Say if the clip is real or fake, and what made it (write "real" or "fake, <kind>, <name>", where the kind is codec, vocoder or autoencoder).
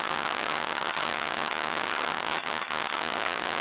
fake, vocoder, HiFi-GAN